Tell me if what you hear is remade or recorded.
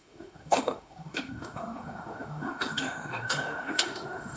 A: remade